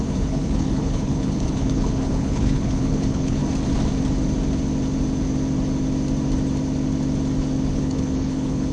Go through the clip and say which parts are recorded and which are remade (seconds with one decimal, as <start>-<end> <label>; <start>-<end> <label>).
0.0-3.4 remade; 3.4-7.7 recorded; 7.7-8.7 remade